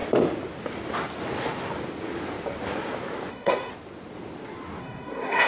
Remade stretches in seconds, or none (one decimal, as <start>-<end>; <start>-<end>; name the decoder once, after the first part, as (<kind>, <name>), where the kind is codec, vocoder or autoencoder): 3.3-3.7 (codec, SNAC); 4.8-5.5